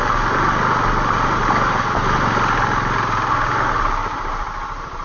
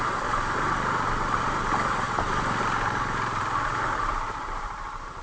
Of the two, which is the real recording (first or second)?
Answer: first